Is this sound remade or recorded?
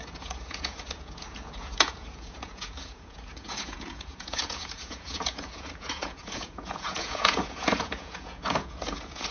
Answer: remade